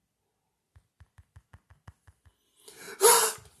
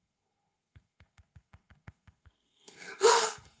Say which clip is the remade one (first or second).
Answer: second